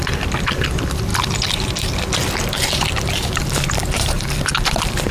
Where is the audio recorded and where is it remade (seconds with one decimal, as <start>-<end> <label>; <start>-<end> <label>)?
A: 0.0-5.1 remade